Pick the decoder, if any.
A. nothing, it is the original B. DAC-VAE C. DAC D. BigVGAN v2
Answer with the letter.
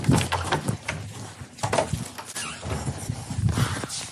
A